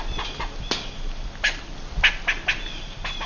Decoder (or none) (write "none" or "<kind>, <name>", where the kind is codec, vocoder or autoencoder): none